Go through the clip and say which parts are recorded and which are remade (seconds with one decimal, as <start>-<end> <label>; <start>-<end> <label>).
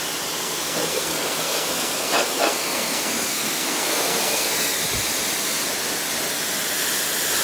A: 0.0-0.4 recorded; 0.4-4.8 remade; 4.8-7.4 recorded